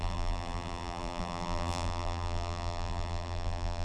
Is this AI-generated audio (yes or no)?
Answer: yes